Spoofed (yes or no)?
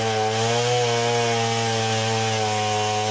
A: no